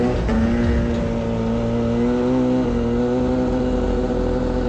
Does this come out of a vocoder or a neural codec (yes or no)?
no